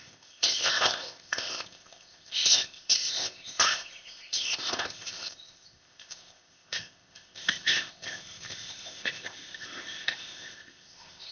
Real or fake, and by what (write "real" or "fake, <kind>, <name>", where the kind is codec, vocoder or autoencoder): fake, codec, ZipCodec